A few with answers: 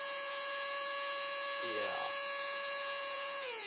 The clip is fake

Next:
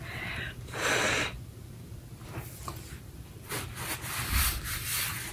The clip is fake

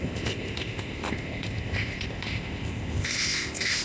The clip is fake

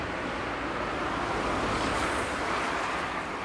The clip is real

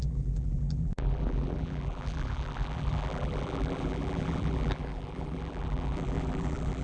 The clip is fake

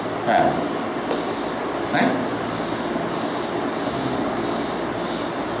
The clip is real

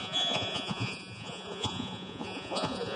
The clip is fake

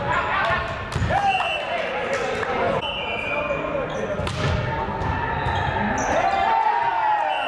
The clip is real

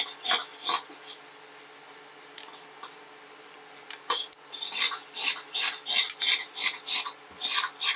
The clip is real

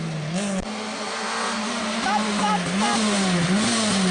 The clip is real